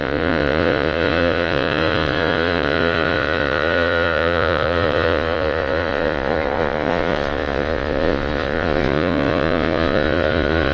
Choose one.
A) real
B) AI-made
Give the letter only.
B